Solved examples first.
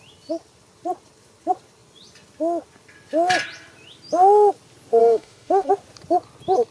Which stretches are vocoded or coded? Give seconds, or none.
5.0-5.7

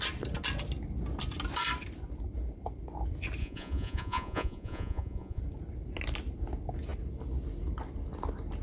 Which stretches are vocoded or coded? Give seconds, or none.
3.4-5.4